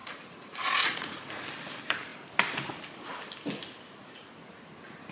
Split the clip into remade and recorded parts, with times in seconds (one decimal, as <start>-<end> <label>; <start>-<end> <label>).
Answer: 0.0-1.3 remade; 1.3-5.1 recorded